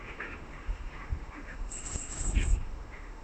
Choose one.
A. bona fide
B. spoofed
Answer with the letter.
B